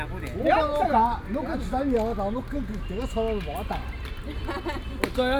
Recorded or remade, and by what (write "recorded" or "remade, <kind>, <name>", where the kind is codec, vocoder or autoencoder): recorded